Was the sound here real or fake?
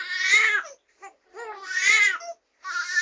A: real